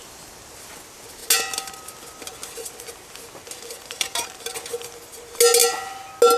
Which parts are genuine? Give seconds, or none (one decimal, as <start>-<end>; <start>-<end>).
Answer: 0.0-6.4